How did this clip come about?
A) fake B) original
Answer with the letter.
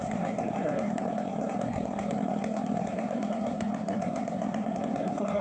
A